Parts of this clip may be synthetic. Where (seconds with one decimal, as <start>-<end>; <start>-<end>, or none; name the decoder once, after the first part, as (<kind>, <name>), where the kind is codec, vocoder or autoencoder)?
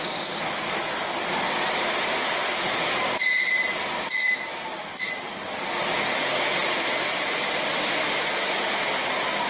4.5-5.7 (vocoder, BigVGAN v2)